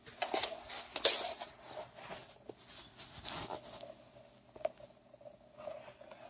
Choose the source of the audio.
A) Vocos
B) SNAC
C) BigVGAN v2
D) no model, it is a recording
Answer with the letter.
D